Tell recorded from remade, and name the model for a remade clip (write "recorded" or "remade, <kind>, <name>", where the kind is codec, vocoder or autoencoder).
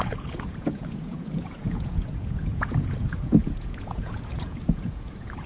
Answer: remade, vocoder, Vocos